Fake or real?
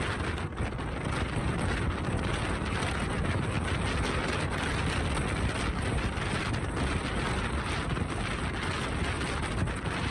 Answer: real